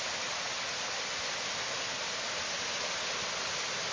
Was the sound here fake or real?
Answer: real